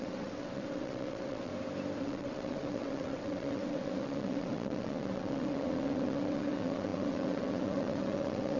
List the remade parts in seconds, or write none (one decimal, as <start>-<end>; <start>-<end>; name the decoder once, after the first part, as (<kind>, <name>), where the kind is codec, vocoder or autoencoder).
0.0-1.5 (vocoder, WaveNeXt); 2.0-8.6